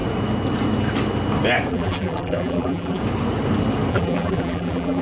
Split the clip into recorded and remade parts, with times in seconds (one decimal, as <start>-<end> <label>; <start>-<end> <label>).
0.0-1.7 recorded; 1.7-3.0 remade; 3.0-3.9 recorded; 3.9-5.0 remade